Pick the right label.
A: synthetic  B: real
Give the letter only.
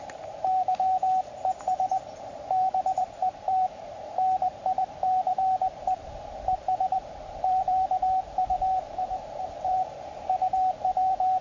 A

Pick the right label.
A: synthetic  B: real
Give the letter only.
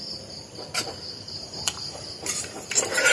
A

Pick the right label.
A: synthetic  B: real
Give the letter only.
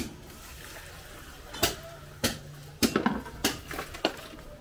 B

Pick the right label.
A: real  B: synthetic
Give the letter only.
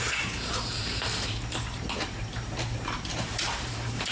B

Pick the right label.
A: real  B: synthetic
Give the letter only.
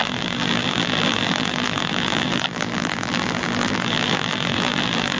B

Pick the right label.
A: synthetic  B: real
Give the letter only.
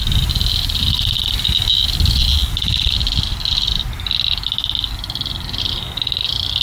B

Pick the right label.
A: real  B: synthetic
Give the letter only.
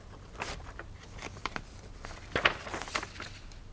B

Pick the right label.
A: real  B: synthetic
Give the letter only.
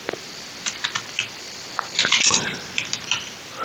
A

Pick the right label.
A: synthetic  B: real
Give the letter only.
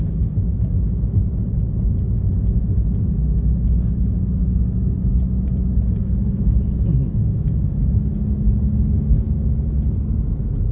B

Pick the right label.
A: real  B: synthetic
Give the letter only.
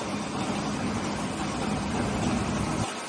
A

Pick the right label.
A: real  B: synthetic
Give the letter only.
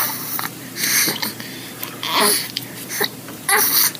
B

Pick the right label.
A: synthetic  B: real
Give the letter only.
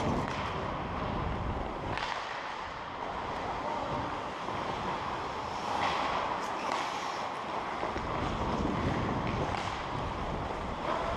B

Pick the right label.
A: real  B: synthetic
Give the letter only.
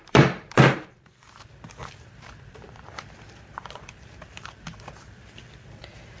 B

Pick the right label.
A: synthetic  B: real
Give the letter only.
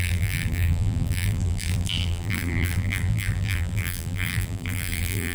A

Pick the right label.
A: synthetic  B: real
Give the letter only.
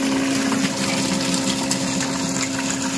B